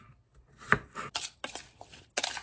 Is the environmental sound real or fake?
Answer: real